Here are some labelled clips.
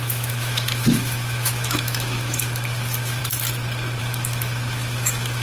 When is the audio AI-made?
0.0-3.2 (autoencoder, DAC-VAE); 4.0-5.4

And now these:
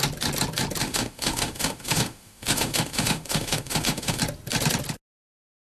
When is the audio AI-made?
0.8-4.2 (autoencoder, DAC-VAE)

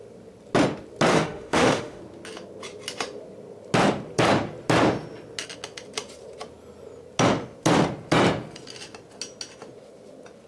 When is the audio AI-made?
1.1-2.0 (autoencoder, DAC-VAE)